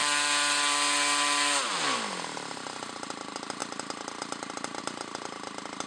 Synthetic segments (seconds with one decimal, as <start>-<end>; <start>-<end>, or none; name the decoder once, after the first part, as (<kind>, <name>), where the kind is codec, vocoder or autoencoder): none